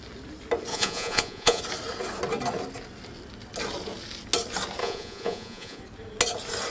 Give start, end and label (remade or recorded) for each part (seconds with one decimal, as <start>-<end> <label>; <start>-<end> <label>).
0.0-0.7 recorded; 0.7-1.6 remade; 1.6-4.8 recorded; 4.8-5.8 remade; 5.8-6.7 recorded